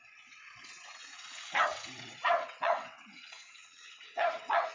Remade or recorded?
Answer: remade